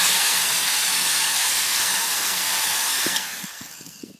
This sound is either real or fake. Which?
fake